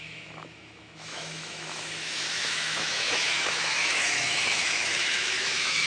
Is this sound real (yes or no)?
no